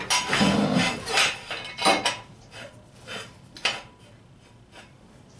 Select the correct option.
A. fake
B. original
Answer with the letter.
B